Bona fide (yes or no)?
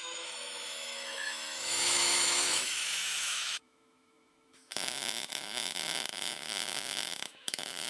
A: no